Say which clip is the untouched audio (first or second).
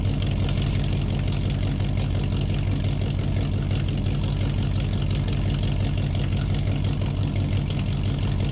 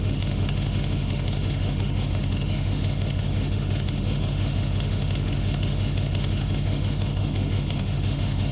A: first